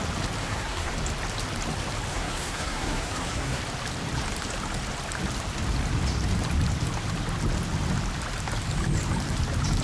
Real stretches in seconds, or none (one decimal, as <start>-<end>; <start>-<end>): 0.0-0.4; 0.9-2.1; 3.6-9.8